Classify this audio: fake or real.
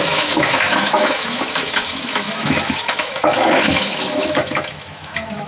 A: fake